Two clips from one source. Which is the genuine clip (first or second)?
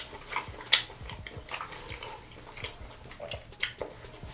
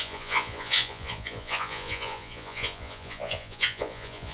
first